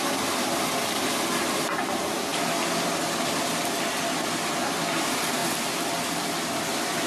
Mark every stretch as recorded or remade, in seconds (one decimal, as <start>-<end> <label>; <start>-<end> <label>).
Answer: 0.0-2.3 remade; 2.3-4.8 recorded; 4.8-5.4 remade; 5.4-6.1 recorded; 6.1-7.1 remade